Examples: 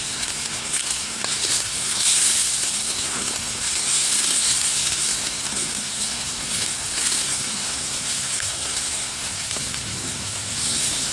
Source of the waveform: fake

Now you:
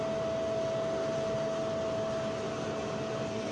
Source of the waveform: real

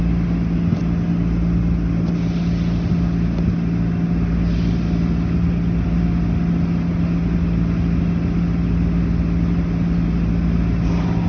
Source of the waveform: real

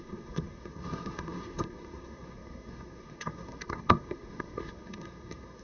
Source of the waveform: fake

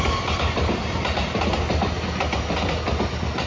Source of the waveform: real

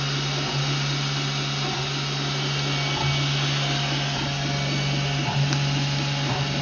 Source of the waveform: real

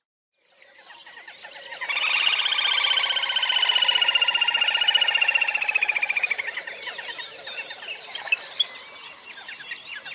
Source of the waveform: real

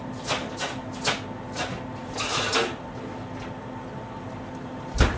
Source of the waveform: real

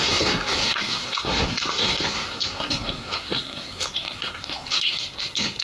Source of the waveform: fake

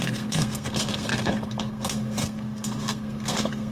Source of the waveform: fake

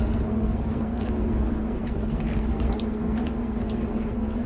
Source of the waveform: fake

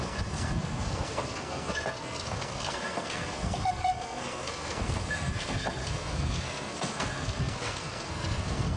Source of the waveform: fake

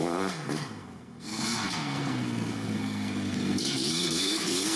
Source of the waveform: fake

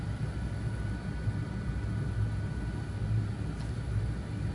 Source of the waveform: real